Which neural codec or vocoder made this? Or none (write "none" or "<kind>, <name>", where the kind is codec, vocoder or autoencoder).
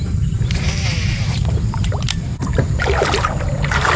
vocoder, BigVGAN v2